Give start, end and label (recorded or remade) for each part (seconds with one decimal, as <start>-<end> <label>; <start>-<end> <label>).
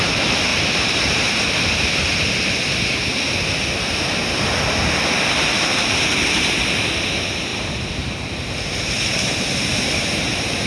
0.0-0.5 recorded; 0.5-1.6 remade; 1.6-5.7 recorded; 5.7-6.6 remade; 6.6-7.5 recorded; 7.5-10.7 remade